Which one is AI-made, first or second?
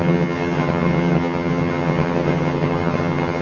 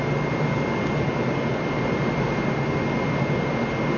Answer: first